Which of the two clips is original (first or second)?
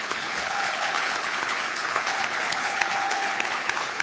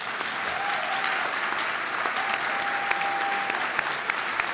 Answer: second